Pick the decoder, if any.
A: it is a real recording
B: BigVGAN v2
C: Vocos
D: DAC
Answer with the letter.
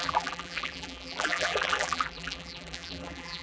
B